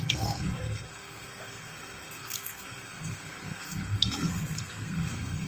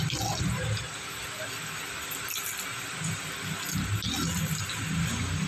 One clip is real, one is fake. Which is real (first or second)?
second